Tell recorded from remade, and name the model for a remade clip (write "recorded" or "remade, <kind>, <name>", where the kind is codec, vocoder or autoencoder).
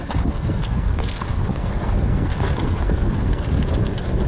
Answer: remade, codec, SNAC